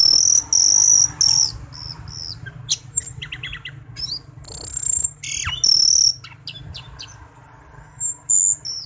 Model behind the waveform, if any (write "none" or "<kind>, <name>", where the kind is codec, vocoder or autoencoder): none